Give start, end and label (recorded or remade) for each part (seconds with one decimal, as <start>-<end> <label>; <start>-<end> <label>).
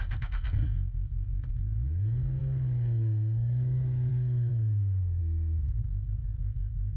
0.0-7.0 remade